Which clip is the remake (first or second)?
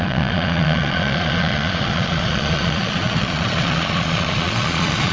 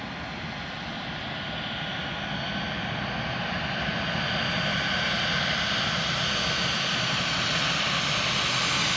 first